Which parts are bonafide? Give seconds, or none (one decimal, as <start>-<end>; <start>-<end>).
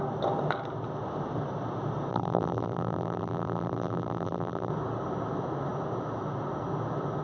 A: 0.0-2.1; 4.7-7.2